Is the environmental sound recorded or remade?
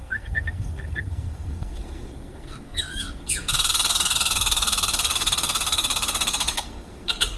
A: remade